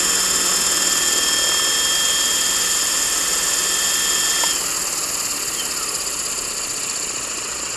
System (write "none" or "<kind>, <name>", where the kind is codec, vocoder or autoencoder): none